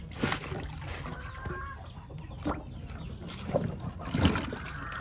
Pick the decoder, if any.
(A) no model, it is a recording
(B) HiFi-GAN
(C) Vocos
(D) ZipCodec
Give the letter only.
A